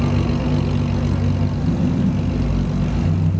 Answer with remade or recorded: recorded